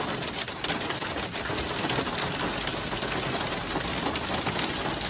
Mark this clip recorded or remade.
recorded